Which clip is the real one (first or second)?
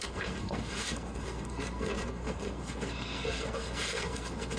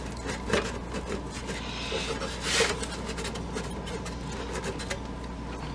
second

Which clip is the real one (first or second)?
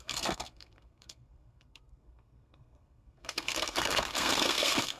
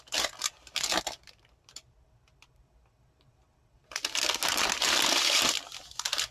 second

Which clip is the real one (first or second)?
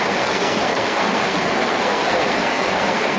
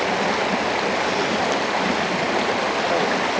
second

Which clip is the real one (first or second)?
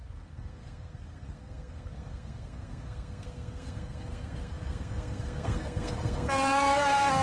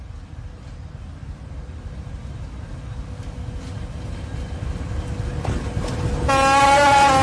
second